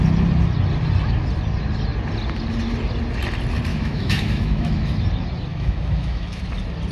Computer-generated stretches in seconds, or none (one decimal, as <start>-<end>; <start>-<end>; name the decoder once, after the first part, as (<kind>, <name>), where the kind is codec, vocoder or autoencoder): 3.7-4.9 (autoencoder, DAC-VAE); 5.5-6.4